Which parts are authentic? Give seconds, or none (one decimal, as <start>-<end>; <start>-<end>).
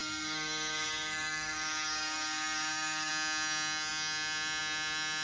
3.1-5.2